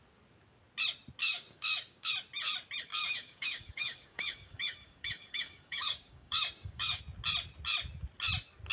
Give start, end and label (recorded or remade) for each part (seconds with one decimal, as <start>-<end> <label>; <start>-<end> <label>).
0.0-1.2 recorded; 1.2-2.1 remade; 2.1-2.9 recorded; 2.9-7.0 remade; 7.0-8.7 recorded